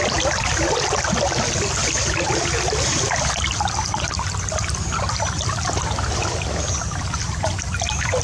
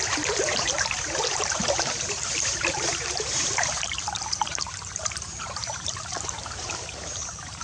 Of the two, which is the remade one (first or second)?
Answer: second